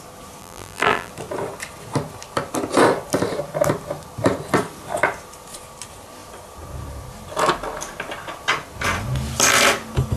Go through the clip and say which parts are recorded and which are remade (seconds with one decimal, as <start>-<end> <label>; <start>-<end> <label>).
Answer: 0.0-0.4 recorded; 0.4-1.1 remade; 1.1-10.2 recorded